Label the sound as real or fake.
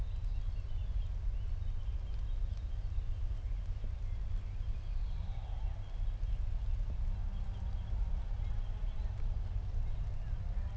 real